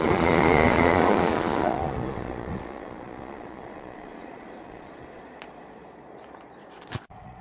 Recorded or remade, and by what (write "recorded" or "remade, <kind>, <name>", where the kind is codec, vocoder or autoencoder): remade, vocoder, Vocos